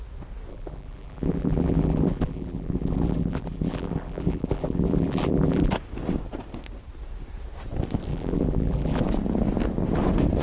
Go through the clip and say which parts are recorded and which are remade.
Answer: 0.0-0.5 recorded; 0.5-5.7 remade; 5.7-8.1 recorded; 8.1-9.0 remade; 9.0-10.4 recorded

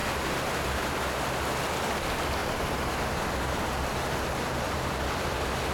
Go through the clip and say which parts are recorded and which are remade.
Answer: 0.0-5.7 recorded

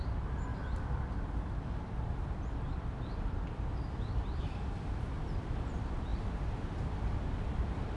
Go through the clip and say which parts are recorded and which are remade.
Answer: 0.0-8.0 remade